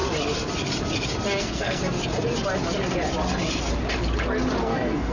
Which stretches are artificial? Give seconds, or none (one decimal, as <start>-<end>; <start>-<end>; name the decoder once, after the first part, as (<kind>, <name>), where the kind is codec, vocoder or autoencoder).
1.4-1.8 (codec, SNAC); 4.6-5.1